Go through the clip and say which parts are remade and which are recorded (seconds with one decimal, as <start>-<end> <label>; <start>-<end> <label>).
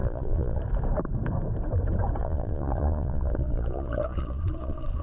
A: 0.0-0.6 remade; 0.6-2.2 recorded; 2.2-5.0 remade